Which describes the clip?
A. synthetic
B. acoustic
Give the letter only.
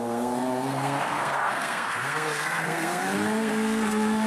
A